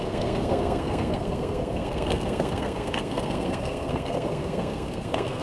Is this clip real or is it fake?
fake